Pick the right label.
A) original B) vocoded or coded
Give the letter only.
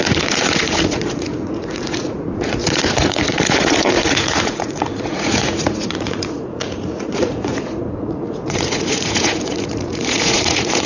B